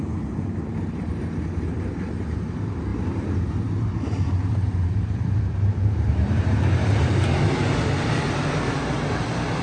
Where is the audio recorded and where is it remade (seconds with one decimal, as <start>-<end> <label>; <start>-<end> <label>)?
0.0-9.6 remade